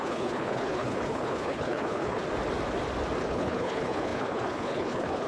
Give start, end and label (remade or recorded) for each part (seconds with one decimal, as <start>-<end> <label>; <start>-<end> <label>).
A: 0.0-2.2 remade; 2.2-3.2 recorded; 3.2-5.3 remade